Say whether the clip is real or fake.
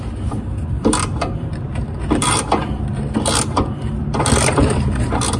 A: fake